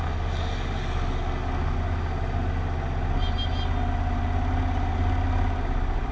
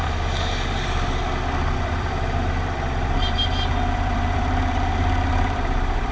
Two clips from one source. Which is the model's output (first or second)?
second